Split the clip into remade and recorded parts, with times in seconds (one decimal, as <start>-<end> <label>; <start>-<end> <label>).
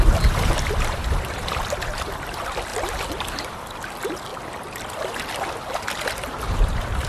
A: 0.0-2.7 remade; 2.7-3.5 recorded; 3.5-4.3 remade; 4.3-6.4 recorded; 6.4-7.1 remade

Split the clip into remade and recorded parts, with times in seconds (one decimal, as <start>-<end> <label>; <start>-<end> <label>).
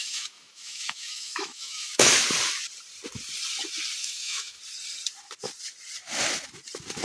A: 0.0-2.1 remade; 2.1-4.0 recorded; 4.0-4.6 remade; 4.6-7.0 recorded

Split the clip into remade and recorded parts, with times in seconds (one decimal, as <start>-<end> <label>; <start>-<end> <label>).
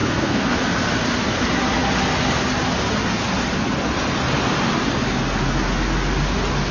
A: 0.0-0.6 remade; 0.6-6.7 recorded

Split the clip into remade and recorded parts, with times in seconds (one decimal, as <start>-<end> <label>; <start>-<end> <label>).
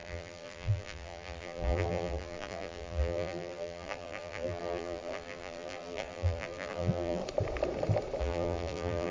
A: 0.0-7.2 remade; 7.2-8.2 recorded; 8.2-9.1 remade